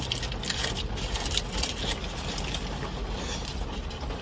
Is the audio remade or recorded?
recorded